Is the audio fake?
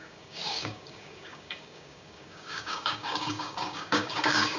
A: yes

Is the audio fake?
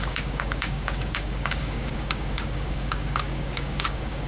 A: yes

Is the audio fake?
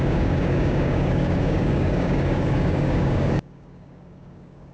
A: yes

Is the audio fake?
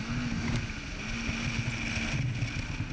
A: no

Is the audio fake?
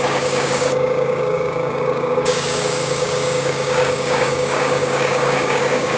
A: yes